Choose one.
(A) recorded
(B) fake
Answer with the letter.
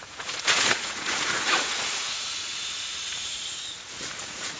B